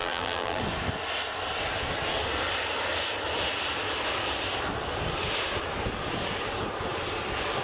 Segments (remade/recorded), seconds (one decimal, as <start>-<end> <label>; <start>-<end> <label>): 0.0-0.6 remade; 0.6-7.6 recorded